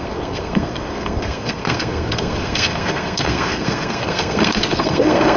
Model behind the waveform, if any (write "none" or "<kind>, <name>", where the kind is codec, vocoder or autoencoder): codec, SNAC